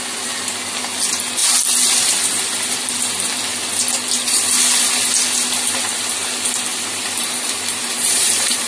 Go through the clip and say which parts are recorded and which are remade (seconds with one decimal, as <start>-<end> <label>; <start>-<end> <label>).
0.0-6.7 recorded; 6.7-8.7 remade